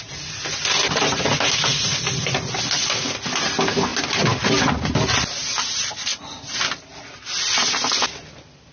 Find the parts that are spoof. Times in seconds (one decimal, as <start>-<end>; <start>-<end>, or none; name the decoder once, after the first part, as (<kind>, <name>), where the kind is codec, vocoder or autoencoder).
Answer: none